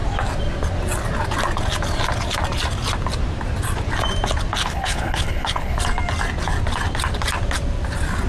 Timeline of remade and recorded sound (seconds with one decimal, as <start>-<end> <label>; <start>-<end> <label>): 0.0-4.6 recorded; 4.6-5.8 remade; 5.8-8.3 recorded